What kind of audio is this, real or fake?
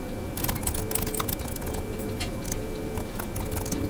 real